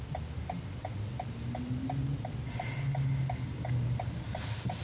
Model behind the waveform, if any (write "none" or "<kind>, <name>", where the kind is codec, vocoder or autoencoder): none